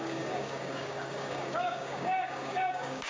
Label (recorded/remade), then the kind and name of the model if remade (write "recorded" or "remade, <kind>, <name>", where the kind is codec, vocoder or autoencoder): remade, codec, DAC